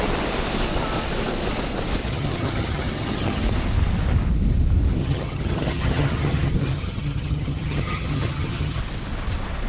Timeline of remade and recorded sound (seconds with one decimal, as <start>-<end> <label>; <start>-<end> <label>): 0.0-2.0 recorded; 2.0-3.4 remade; 3.4-5.0 recorded; 5.0-8.8 remade; 8.8-9.7 recorded